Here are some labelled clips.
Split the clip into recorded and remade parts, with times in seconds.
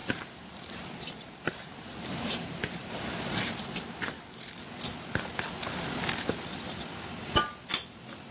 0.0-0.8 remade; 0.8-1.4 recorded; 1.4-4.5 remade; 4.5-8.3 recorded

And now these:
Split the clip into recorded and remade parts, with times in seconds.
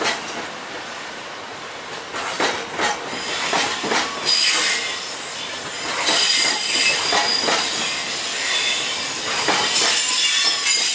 0.0-2.1 remade; 2.1-3.5 recorded; 3.5-7.3 remade; 7.3-8.1 recorded; 8.1-10.9 remade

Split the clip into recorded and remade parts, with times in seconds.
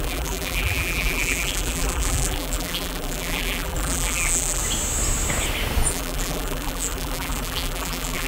0.0-4.6 remade; 4.6-5.9 recorded; 5.9-8.3 remade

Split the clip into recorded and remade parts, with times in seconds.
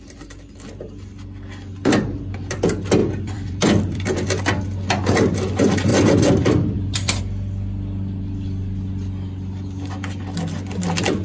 0.0-3.0 recorded; 3.0-4.4 remade; 4.4-5.9 recorded; 5.9-7.2 remade; 7.2-11.2 recorded